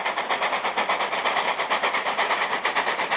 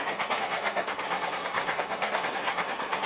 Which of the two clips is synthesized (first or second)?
second